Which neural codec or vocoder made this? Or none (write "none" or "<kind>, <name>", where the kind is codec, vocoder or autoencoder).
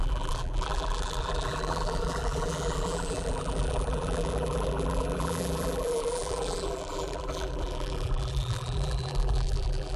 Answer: vocoder, BigVGAN v2